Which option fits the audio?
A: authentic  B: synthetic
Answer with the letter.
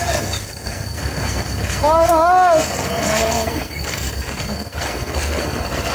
B